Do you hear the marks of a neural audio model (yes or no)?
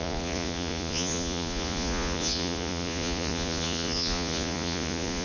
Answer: yes